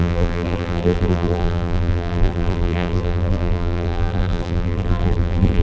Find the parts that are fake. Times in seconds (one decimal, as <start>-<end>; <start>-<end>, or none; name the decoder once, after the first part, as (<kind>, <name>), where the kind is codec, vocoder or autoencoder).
0.0-5.6 (vocoder, BigVGAN v2)